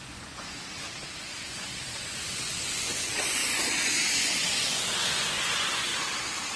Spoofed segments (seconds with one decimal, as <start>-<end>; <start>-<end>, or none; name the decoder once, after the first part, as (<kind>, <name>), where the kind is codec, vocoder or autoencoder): 0.0-0.6 (vocoder, Vocos); 1.2-5.9